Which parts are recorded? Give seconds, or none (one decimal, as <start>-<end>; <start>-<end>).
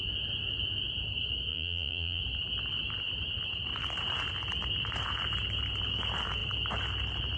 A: 0.0-1.5; 2.2-7.4